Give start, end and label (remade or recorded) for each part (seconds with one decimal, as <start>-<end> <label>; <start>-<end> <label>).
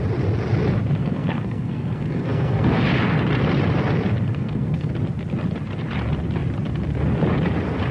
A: 0.0-1.0 recorded; 1.0-2.8 remade; 2.8-4.3 recorded; 4.3-4.9 remade; 4.9-7.9 recorded